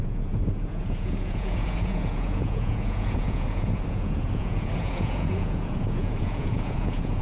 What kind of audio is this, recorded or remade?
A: remade